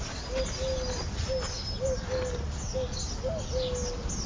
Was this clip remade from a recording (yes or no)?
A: no